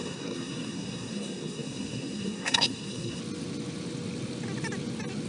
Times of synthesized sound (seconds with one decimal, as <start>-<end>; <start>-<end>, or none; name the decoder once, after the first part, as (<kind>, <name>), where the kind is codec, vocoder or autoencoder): 0.0-3.2 (codec, SNAC)